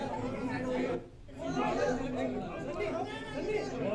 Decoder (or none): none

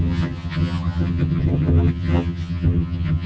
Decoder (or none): vocoder, HiFi-GAN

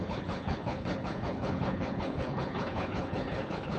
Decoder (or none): codec, HILCodec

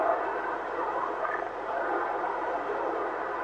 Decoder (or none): none